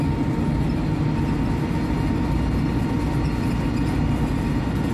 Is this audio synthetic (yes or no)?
no